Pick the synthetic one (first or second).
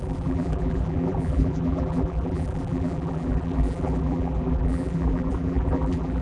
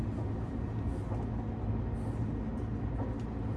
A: first